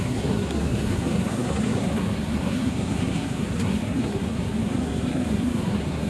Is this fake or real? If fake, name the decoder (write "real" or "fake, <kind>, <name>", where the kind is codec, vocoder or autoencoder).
fake, codec, SNAC